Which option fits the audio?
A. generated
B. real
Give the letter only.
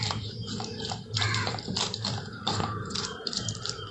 A